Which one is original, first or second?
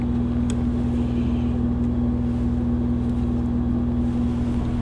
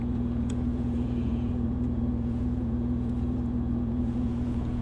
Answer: first